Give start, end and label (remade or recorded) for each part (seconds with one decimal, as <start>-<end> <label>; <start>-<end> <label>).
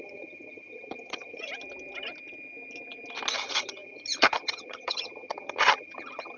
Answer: 0.0-1.5 remade; 1.5-3.3 recorded; 3.3-6.4 remade